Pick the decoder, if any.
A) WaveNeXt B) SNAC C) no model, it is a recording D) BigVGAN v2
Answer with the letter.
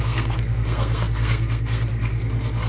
B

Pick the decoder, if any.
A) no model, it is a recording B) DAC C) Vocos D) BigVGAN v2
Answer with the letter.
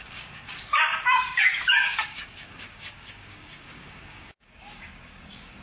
B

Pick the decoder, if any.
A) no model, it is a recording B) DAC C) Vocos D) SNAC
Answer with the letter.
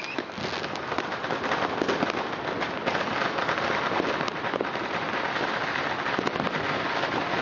A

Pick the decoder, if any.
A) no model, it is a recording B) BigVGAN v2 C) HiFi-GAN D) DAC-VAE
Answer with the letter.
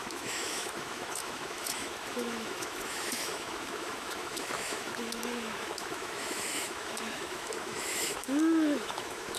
D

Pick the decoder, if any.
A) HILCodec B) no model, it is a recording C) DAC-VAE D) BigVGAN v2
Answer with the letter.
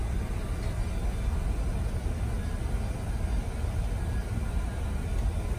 B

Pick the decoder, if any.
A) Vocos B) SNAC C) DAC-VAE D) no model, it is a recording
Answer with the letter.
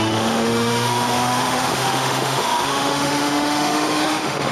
C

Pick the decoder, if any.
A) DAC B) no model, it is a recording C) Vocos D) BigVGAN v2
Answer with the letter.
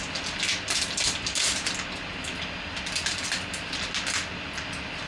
B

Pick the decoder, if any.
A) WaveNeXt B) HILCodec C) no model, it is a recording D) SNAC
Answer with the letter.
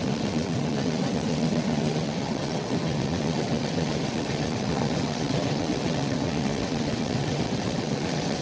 A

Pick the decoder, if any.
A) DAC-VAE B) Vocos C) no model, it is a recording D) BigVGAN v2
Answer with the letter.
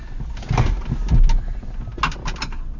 C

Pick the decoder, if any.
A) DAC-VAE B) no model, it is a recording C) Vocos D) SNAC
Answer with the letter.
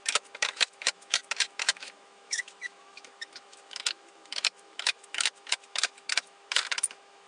A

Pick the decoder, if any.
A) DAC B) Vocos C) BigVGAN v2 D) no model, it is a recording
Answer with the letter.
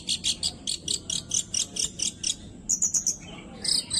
D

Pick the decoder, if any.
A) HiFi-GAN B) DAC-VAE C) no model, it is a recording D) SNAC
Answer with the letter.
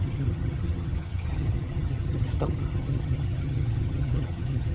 A